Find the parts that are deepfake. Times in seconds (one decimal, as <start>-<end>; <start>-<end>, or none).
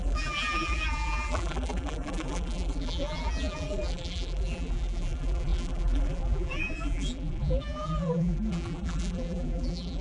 0.0-10.0